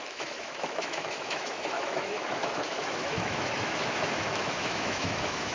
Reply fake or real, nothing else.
fake